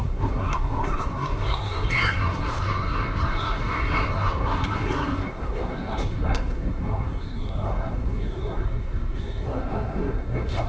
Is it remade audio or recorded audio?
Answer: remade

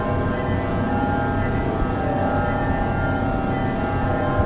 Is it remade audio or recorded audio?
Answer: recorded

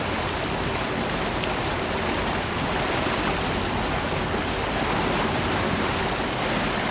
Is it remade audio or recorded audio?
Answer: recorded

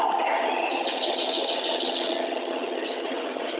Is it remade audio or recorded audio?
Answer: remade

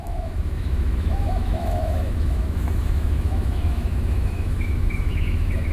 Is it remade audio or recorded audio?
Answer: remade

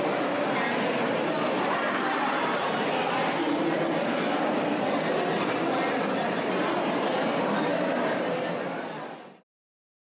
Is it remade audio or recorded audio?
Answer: recorded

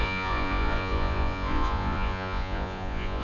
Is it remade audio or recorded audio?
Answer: remade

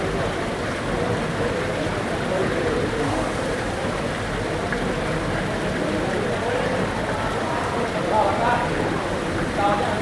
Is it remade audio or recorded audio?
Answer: remade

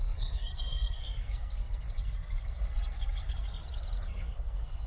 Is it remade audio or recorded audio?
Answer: remade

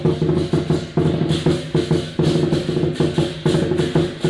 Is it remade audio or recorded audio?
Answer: recorded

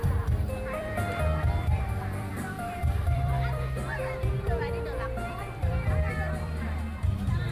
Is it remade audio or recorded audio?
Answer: remade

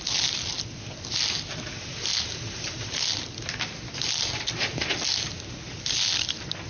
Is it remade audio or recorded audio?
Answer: recorded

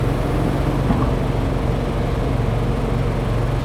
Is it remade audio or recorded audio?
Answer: recorded